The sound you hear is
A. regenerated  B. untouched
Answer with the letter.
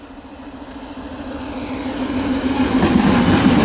B